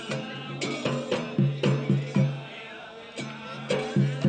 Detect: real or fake real